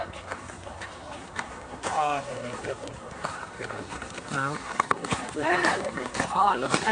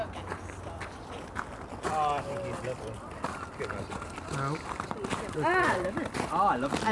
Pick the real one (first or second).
second